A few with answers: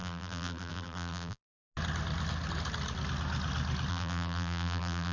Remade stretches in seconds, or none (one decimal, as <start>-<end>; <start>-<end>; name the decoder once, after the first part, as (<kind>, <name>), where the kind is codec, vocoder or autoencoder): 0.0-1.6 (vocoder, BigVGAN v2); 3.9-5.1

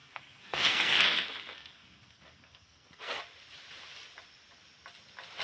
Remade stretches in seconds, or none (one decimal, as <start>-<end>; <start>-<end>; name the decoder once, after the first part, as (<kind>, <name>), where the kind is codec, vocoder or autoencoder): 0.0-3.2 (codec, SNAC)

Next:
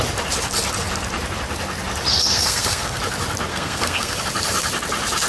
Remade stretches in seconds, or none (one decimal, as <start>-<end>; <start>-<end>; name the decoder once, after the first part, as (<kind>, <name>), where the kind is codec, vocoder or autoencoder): 2.1-3.0 (codec, SNAC); 3.5-4.2

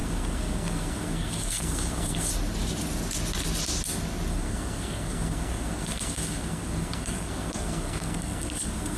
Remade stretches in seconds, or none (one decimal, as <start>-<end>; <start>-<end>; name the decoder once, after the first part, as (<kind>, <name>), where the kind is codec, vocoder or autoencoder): 0.0-2.3 (codec, SNAC); 4.3-9.0

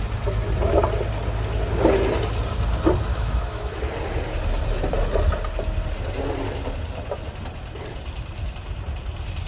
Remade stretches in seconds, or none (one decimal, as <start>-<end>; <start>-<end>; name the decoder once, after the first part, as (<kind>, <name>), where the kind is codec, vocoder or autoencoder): 3.1-3.8 (autoencoder, DAC-VAE)